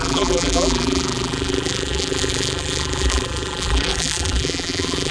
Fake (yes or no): yes